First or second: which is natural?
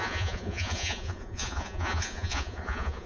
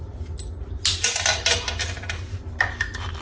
second